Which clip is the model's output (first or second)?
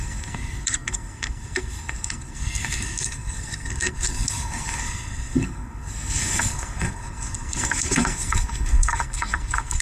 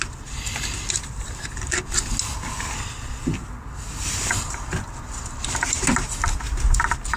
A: first